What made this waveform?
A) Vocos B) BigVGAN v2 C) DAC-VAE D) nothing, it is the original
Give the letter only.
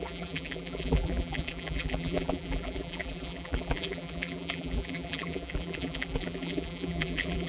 B